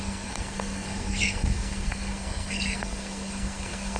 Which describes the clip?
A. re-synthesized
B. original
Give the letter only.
A